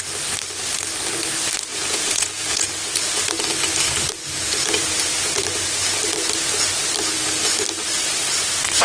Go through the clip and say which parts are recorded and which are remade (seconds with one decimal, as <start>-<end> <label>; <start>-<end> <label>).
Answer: 0.0-1.7 recorded; 1.7-2.9 remade; 2.9-8.8 recorded